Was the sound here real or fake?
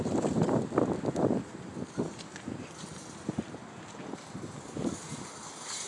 real